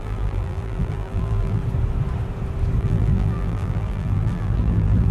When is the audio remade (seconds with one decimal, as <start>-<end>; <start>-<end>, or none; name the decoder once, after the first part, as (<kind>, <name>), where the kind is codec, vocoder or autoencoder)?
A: 0.0-1.6 (vocoder, BigVGAN v2); 2.8-5.1